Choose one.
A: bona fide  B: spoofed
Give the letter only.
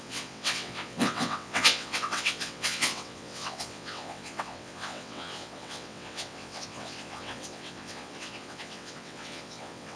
B